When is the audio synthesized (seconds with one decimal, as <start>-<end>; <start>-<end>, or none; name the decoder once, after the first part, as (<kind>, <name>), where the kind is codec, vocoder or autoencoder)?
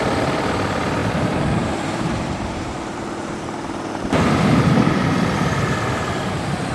1.0-5.0 (vocoder, BigVGAN v2)